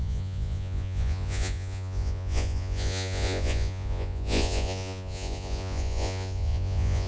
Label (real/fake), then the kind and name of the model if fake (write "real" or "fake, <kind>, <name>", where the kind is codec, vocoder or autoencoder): fake, vocoder, Vocos